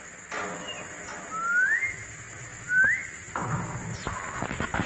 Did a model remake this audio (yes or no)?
no